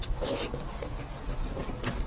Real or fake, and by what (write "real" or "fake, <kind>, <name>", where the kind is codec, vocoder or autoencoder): real